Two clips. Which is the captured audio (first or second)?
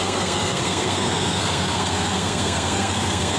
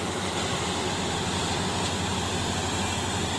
second